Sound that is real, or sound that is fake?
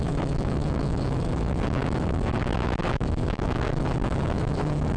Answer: fake